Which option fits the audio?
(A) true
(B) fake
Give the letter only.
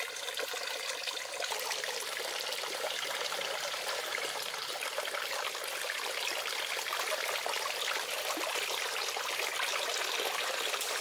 A